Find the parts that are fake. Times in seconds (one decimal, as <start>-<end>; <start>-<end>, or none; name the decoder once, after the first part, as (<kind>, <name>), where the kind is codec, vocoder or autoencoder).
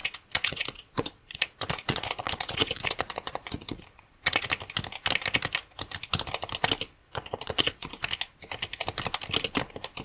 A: 0.0-4.5 (vocoder, Vocos); 7.0-8.0